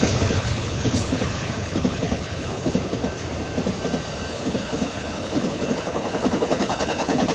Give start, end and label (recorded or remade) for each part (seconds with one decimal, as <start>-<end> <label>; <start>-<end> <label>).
0.0-3.0 remade; 3.0-4.3 recorded; 4.3-7.3 remade